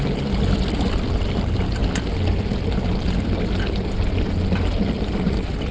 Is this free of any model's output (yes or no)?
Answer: yes